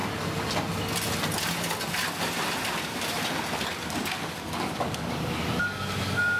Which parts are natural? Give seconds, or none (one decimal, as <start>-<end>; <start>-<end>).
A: 0.0-3.8